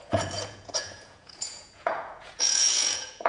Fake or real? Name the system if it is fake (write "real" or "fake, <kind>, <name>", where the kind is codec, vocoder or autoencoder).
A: fake, vocoder, Vocos